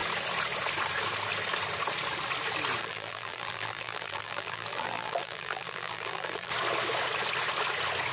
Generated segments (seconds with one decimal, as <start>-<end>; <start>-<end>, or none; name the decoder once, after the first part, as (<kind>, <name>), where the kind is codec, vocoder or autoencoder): 2.8-6.5 (vocoder, BigVGAN v2)